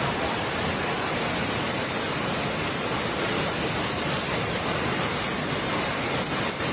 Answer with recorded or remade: recorded